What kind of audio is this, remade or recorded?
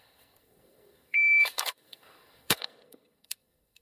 remade